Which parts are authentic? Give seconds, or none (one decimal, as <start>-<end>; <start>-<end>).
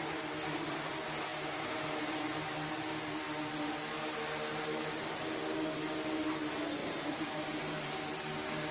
0.0-6.8; 8.2-8.7